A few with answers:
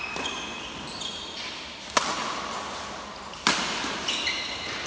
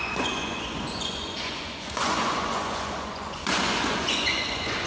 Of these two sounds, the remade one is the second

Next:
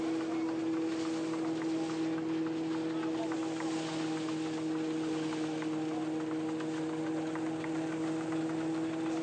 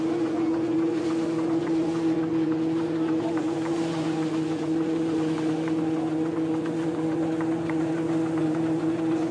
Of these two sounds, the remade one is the second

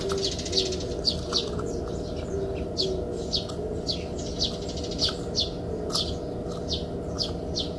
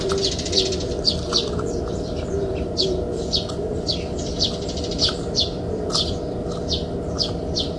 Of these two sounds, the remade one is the second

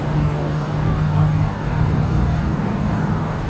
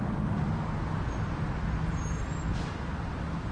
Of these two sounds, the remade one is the first